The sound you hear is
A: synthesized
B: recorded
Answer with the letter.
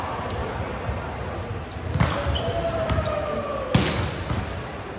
B